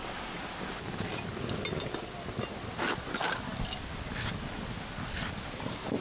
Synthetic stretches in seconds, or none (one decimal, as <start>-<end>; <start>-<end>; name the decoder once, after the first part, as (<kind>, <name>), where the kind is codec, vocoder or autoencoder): none